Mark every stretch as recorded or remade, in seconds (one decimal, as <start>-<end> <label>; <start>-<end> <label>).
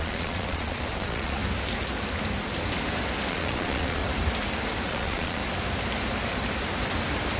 0.0-1.4 remade; 1.4-3.3 recorded; 3.3-4.0 remade; 4.0-4.9 recorded; 4.9-5.4 remade; 5.4-7.4 recorded